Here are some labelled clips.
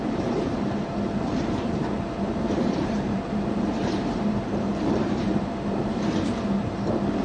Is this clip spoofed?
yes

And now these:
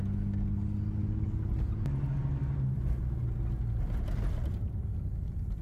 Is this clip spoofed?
no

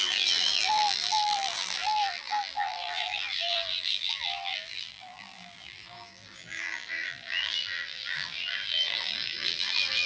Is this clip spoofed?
yes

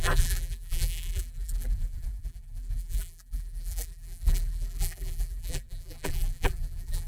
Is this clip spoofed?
yes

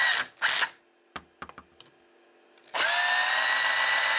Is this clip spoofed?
no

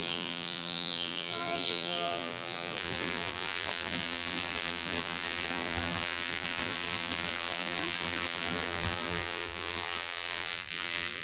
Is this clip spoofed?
yes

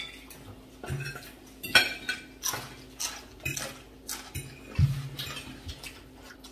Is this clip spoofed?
no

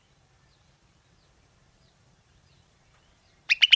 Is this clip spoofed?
yes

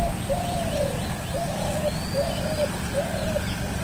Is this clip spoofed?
yes